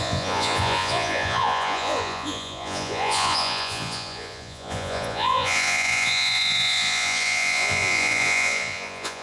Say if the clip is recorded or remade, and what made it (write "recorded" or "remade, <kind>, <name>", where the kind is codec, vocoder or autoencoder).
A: remade, vocoder, Vocos